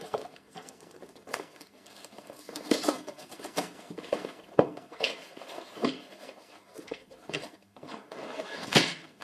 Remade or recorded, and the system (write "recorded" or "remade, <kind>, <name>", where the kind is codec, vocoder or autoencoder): remade, codec, SNAC